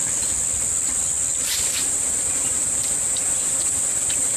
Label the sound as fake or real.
real